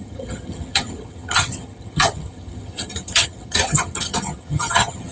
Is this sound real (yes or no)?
no